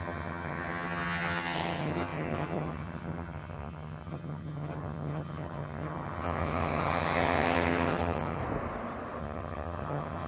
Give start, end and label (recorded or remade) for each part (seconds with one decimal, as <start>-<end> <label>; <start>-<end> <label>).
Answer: 0.0-8.4 remade; 8.4-9.2 recorded; 9.2-10.3 remade